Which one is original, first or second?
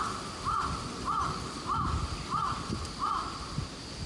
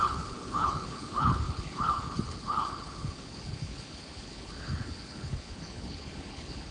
first